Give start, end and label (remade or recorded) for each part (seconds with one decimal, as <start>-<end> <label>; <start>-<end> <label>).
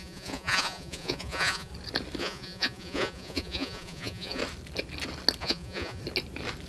0.0-1.7 remade; 1.7-2.2 recorded; 2.2-4.4 remade; 4.4-5.4 recorded; 5.4-6.0 remade; 6.0-6.7 recorded